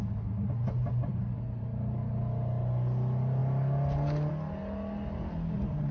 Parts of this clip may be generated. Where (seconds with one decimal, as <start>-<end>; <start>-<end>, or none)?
none